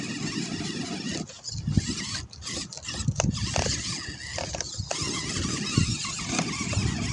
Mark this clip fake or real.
real